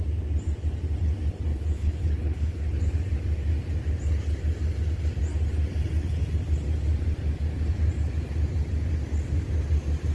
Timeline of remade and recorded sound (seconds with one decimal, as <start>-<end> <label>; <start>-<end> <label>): 0.0-1.5 recorded; 1.5-2.9 remade; 2.9-10.1 recorded